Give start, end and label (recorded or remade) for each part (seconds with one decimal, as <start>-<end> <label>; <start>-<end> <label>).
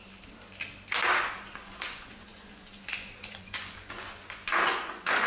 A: 0.0-1.3 recorded; 1.3-5.3 remade